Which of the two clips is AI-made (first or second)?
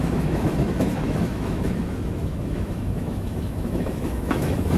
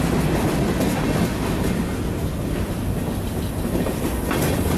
first